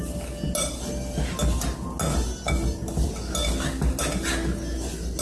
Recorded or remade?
recorded